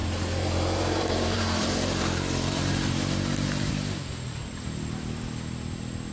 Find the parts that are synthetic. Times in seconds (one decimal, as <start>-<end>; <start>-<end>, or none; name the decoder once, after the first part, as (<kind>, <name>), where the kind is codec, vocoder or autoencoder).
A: 0.0-3.7 (vocoder, BigVGAN v2)